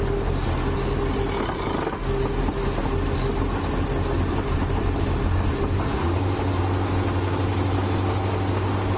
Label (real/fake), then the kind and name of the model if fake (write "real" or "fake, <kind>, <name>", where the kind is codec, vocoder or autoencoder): real